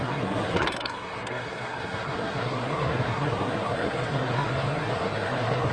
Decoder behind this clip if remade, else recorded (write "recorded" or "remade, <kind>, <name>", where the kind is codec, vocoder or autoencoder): remade, codec, SNAC